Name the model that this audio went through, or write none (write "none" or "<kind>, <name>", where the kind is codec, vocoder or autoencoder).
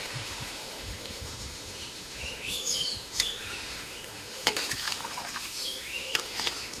autoencoder, DAC-VAE